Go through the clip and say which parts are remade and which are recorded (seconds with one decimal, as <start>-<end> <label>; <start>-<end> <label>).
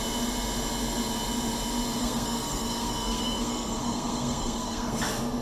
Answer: 0.0-2.0 recorded; 2.0-5.0 remade; 5.0-5.4 recorded